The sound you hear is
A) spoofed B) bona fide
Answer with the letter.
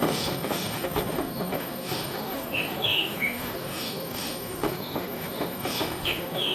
A